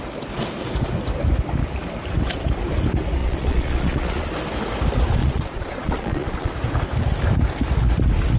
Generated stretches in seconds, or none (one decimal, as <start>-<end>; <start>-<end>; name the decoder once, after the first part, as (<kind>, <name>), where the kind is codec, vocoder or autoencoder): 3.2-4.3 (vocoder, Vocos); 5.2-6.5

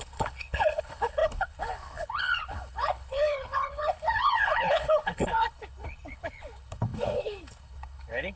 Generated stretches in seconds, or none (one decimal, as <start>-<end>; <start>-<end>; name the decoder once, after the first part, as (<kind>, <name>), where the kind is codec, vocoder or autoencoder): 0.0-8.4 (codec, HILCodec)

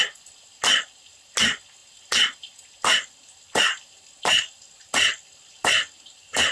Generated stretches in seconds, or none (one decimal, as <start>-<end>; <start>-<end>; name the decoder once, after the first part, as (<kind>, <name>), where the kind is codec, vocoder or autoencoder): none

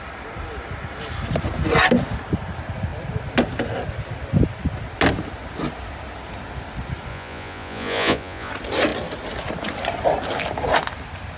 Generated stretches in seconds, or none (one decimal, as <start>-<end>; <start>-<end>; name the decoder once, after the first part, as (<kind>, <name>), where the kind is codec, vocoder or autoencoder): 7.1-8.5 (vocoder, Vocos)

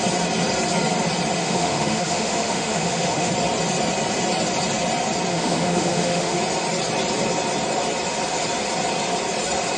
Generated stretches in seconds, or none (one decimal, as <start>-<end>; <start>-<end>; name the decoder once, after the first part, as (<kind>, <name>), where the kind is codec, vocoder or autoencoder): 1.4-3.3 (autoencoder, DAC-VAE); 5.3-6.4